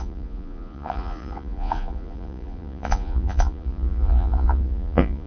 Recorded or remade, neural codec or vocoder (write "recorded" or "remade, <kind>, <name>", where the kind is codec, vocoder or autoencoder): remade, vocoder, Vocos